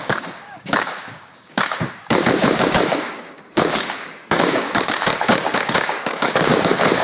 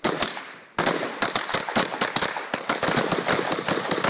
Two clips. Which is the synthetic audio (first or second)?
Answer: first